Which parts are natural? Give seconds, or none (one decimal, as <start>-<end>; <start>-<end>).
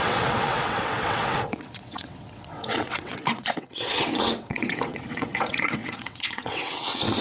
none